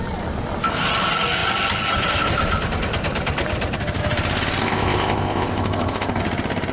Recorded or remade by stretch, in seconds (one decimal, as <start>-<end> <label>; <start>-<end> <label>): 0.0-4.6 recorded; 4.6-6.2 remade; 6.2-6.7 recorded